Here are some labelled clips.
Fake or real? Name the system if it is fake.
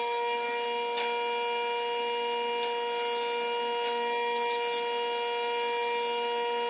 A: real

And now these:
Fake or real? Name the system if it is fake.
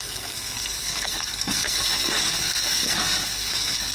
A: fake, codec, SNAC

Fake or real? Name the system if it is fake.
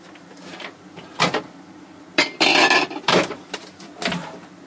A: real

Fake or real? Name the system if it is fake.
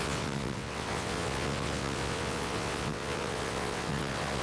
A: fake, vocoder, WaveNeXt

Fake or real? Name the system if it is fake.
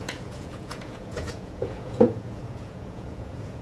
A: fake, vocoder, Vocos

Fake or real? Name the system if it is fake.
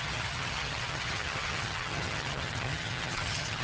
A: fake, vocoder, HiFi-GAN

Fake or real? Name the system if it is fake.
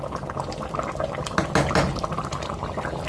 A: real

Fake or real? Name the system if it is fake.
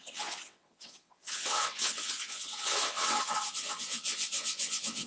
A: fake, vocoder, WaveNeXt